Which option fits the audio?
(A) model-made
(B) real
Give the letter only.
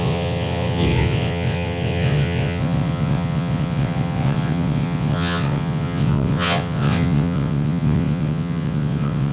A